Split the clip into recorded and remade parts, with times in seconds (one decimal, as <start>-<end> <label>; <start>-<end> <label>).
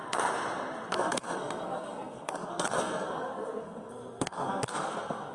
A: 0.0-0.9 recorded; 0.9-5.3 remade